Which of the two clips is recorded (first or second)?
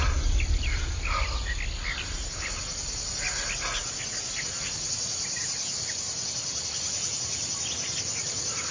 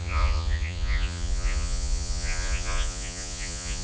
first